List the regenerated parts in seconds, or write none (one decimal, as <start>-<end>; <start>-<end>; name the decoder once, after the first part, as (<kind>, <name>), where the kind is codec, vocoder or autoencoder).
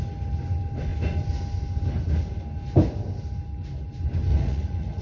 4.3-5.0 (vocoder, Vocos)